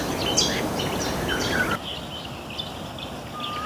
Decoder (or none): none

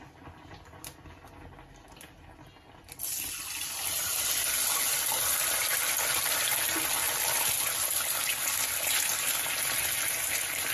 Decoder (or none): none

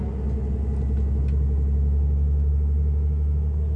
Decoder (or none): none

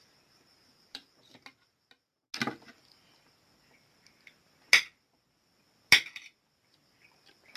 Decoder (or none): none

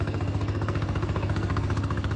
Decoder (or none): codec, SNAC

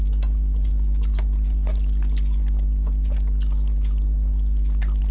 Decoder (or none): none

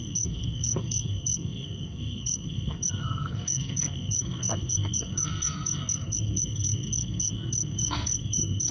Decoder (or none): codec, SNAC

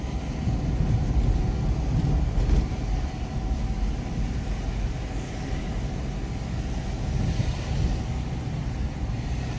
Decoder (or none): none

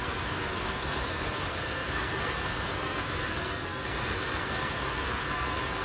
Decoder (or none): codec, SNAC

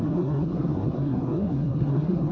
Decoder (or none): codec, SNAC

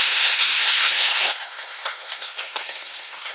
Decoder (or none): codec, SNAC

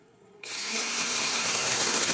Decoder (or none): codec, SNAC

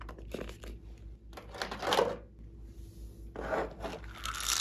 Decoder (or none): none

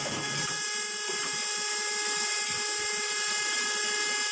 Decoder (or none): none